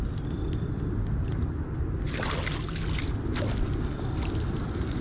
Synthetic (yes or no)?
no